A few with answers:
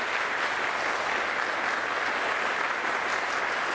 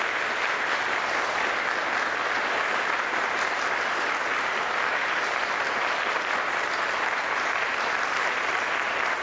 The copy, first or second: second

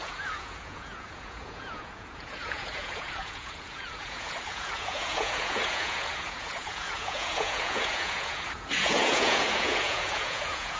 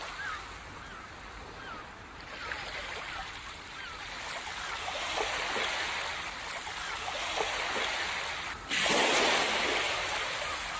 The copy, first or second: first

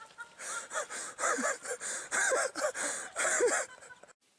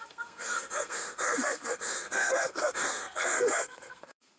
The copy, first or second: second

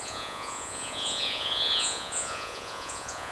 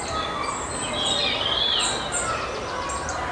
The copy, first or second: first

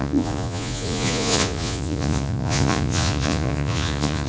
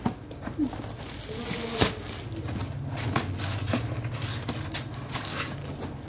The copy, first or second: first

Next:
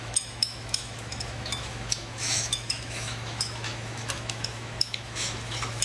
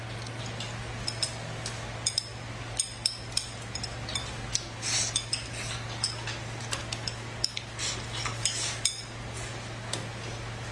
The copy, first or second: first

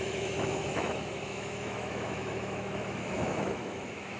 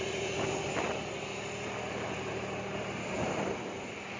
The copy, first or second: first